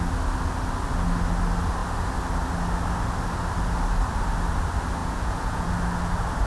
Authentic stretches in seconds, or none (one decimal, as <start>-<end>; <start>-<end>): 0.0-5.0; 5.7-6.5